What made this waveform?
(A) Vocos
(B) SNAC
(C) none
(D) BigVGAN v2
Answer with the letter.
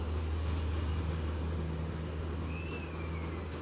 C